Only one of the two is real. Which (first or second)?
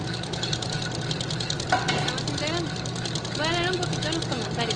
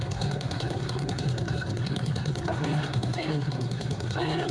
first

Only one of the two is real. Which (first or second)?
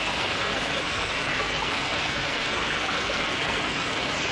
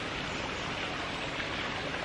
second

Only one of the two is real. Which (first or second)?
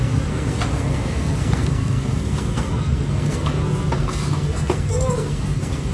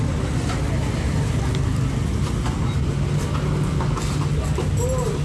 second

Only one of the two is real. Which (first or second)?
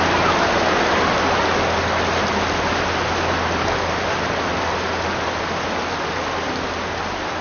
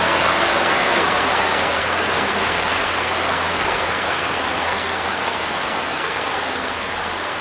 first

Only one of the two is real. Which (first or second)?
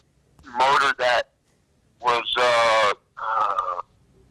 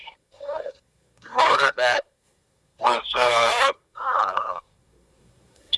first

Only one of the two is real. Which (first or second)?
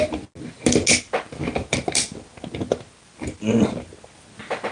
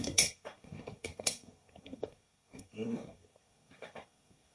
first